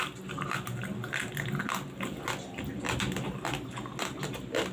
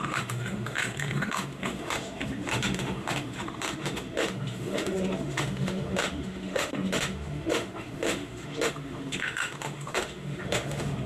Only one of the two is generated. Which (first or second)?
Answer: second